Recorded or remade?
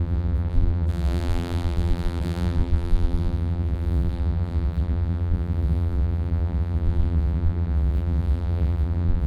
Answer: remade